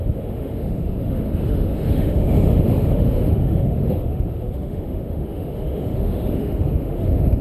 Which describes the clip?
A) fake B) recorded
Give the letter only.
A